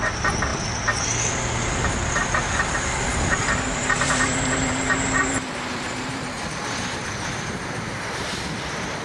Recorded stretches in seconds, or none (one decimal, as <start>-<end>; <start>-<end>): 0.0-3.1; 8.1-9.0